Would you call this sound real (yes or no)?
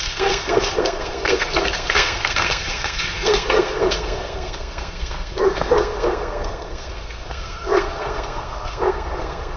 no